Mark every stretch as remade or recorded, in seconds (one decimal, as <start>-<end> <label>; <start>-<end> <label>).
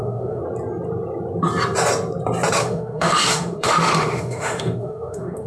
0.0-0.4 remade; 0.4-2.6 recorded; 2.6-5.5 remade